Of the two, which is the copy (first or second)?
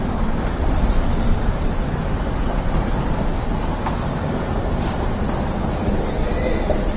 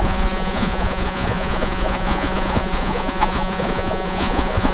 second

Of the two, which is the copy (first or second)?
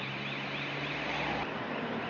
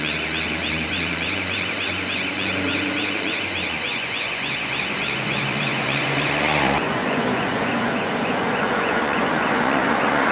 second